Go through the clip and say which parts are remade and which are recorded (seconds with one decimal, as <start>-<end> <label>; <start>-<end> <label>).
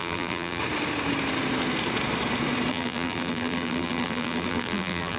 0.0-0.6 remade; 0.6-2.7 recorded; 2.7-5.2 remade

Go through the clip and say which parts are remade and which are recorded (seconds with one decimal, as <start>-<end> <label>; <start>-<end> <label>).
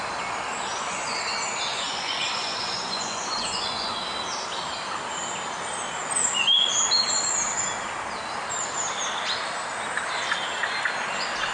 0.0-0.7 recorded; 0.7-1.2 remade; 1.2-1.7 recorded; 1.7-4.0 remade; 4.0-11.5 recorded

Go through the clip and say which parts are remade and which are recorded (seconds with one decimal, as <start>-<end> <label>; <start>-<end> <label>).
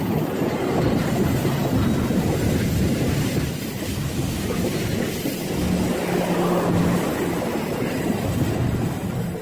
0.0-9.4 recorded